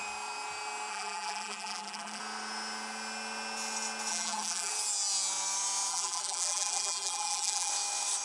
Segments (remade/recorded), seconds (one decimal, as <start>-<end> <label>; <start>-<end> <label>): 0.0-0.9 recorded; 0.9-2.2 remade; 2.2-4.1 recorded; 4.1-4.7 remade; 4.7-5.9 recorded; 5.9-7.7 remade; 7.7-8.2 recorded